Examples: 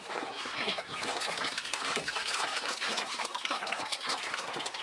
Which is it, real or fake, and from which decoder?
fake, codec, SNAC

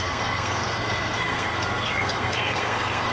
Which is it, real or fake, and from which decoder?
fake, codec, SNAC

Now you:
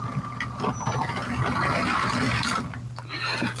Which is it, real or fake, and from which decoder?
real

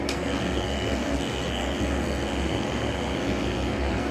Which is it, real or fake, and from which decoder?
fake, codec, SNAC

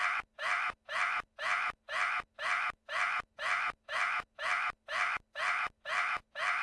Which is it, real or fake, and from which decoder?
real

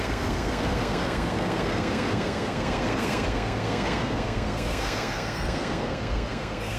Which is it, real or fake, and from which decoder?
fake, codec, SNAC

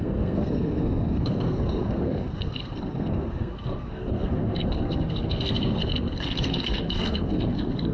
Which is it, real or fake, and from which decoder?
fake, codec, SNAC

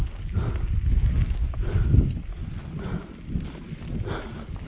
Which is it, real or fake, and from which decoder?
real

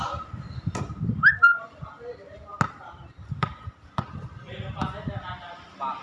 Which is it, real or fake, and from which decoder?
real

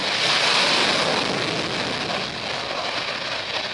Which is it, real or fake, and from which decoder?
real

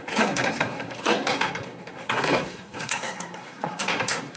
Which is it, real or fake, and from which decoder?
fake, codec, SNAC